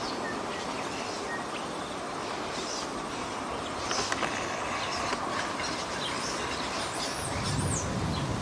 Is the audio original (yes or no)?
yes